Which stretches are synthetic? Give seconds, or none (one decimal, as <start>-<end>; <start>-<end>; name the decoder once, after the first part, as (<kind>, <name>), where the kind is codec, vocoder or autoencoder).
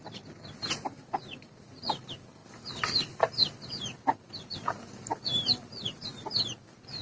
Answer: none